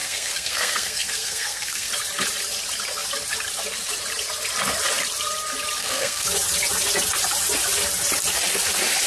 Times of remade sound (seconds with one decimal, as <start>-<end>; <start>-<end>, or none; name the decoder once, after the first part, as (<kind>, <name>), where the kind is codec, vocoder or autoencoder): 0.0-1.9 (codec, SNAC); 5.8-6.3